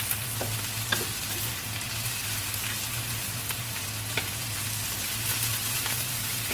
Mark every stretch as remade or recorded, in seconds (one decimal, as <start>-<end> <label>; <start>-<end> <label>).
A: 0.0-6.5 recorded